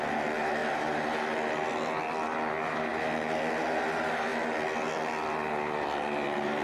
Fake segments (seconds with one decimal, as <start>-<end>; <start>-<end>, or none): none